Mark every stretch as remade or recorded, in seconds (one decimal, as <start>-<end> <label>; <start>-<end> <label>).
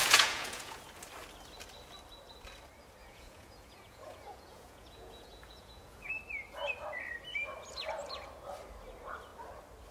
0.0-0.8 remade; 0.8-3.0 recorded; 3.0-6.1 remade; 6.1-9.9 recorded